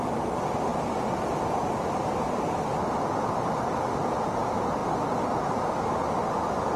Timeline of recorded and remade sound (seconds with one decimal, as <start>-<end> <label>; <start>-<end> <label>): 0.0-6.8 recorded